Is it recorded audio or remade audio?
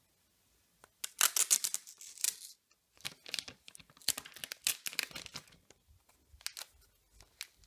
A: recorded